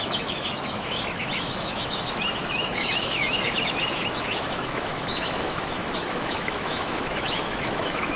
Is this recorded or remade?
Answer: remade